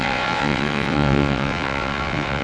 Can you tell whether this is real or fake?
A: fake